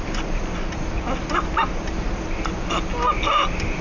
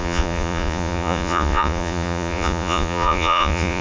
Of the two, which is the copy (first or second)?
second